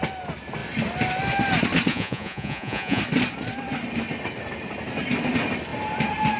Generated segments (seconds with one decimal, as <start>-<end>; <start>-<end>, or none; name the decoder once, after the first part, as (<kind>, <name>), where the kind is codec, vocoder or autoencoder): 1.9-3.0 (vocoder, Vocos)